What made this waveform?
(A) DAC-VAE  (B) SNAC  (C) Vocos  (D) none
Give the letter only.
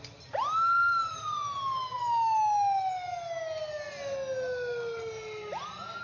D